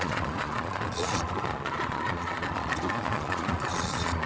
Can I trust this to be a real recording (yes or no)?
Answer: no